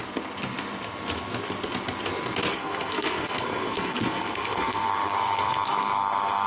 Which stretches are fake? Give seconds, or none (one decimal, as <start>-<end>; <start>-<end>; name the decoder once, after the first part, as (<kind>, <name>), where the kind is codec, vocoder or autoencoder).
2.5-6.5 (codec, SNAC)